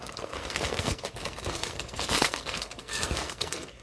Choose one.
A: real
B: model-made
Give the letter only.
B